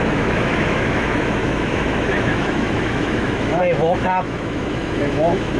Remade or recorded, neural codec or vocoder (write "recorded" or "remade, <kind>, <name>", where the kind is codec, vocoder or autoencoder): remade, autoencoder, DAC-VAE